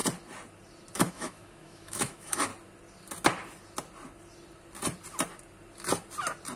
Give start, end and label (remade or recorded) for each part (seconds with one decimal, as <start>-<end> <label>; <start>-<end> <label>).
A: 0.0-1.1 recorded; 1.1-2.5 remade; 2.5-6.6 recorded